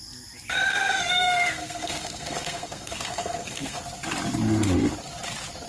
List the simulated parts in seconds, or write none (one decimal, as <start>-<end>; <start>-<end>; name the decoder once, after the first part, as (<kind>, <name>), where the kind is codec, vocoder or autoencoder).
0.7-3.8 (codec, SNAC)